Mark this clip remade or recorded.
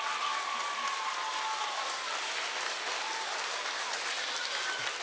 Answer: recorded